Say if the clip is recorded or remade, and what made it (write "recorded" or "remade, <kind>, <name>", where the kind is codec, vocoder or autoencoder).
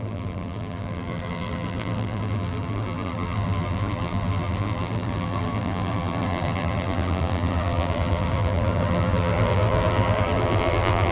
remade, vocoder, BigVGAN v2